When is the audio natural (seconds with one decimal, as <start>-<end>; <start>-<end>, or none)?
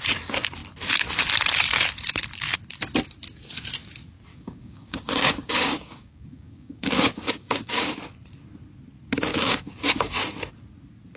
0.0-4.3; 8.0-9.3; 10.1-11.2